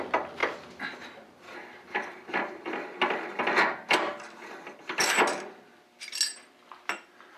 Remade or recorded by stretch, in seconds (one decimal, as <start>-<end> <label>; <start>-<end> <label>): 0.0-7.4 recorded